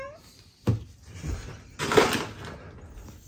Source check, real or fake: real